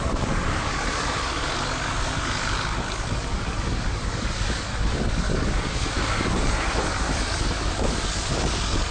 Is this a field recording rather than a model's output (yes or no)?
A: no